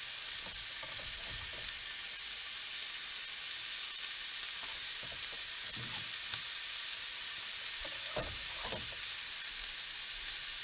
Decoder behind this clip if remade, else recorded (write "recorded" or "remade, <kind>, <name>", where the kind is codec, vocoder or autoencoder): recorded